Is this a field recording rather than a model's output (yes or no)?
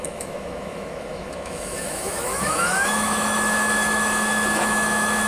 no